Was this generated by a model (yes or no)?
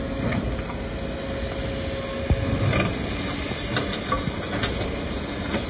no